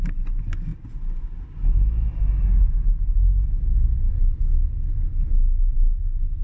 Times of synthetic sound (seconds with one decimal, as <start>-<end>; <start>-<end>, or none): none